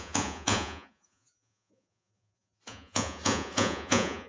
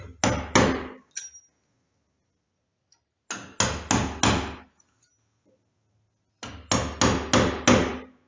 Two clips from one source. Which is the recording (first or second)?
second